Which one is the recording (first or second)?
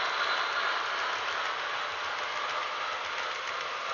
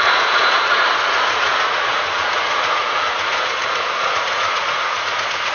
first